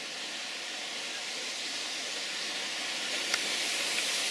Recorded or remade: recorded